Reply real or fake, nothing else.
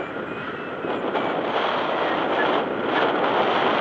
real